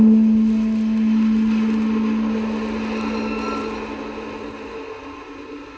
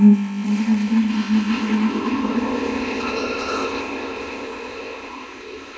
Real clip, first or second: first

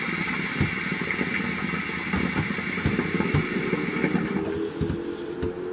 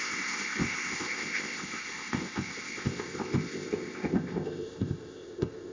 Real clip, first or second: first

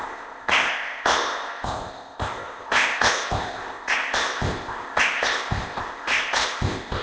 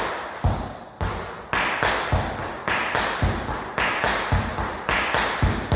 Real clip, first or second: second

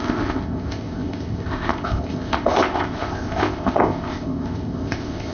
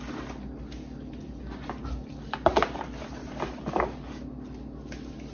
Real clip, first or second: second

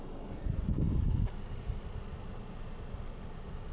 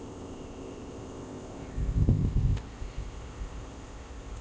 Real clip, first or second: first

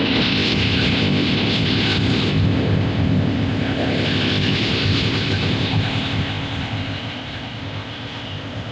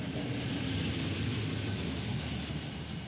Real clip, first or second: second